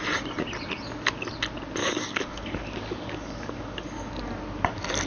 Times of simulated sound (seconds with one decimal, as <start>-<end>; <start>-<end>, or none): 1.8-4.1

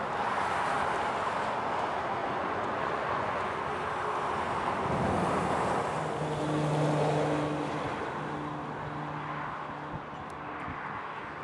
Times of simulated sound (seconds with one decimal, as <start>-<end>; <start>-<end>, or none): 2.2-3.6